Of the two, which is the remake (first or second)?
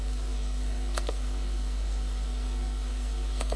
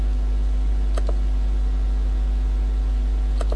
first